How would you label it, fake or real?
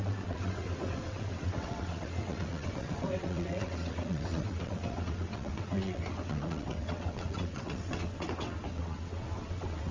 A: fake